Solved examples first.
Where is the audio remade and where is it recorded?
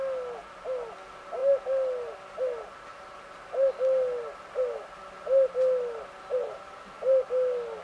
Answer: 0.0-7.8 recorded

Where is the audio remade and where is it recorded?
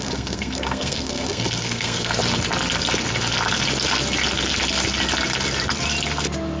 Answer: 0.0-2.2 remade; 2.2-6.6 recorded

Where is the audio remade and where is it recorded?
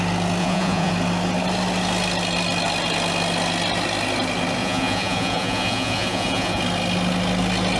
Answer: 0.0-0.4 recorded; 0.4-0.9 remade; 0.9-4.6 recorded; 4.6-6.6 remade; 6.6-7.8 recorded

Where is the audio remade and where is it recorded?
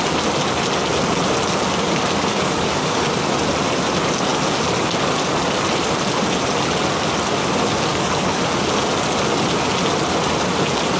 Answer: 0.0-2.3 recorded; 2.3-3.0 remade; 3.0-7.9 recorded; 7.9-8.4 remade; 8.4-11.0 recorded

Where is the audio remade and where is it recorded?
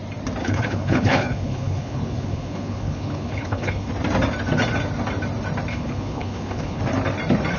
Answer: 0.0-0.4 recorded; 0.4-3.9 remade; 3.9-5.7 recorded; 5.7-6.8 remade; 6.8-7.6 recorded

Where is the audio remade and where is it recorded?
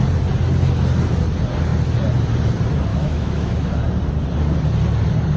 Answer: 0.0-2.9 recorded; 2.9-3.7 remade; 3.7-5.4 recorded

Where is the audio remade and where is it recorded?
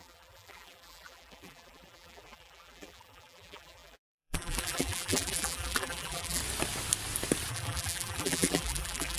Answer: 0.0-6.4 remade; 6.4-7.5 recorded; 7.5-9.2 remade